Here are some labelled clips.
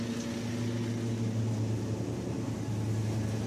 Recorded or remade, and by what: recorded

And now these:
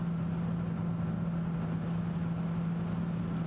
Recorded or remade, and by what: recorded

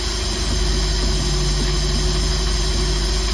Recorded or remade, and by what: recorded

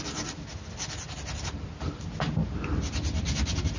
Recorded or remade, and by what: recorded